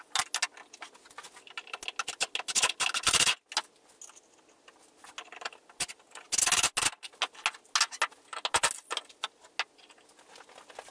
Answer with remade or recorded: recorded